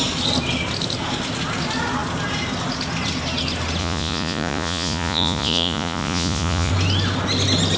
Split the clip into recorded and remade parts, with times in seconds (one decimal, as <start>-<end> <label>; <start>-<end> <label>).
0.0-3.8 recorded; 3.8-6.7 remade; 6.7-7.8 recorded